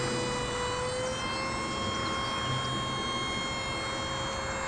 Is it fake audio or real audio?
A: real